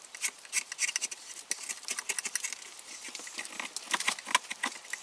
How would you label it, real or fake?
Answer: real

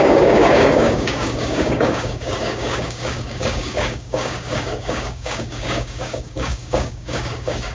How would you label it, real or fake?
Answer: fake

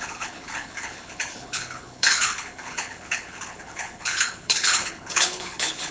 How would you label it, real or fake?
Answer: fake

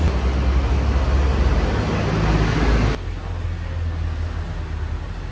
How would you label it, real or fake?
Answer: real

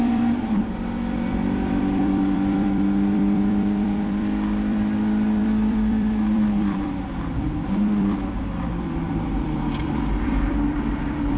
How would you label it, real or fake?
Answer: fake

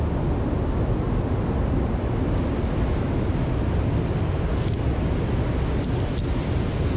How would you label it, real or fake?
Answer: real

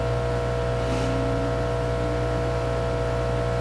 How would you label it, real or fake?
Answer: real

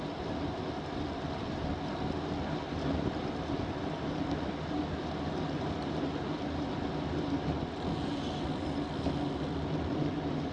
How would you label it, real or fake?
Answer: real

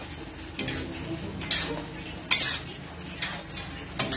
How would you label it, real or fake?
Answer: real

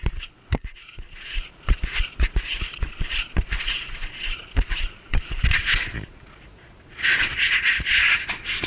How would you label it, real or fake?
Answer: fake